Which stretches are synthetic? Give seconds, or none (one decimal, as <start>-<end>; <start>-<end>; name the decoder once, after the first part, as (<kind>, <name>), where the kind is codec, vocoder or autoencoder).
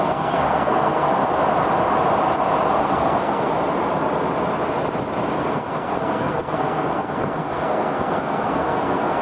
0.0-1.2 (codec, SNAC); 2.7-3.5; 5.4-9.2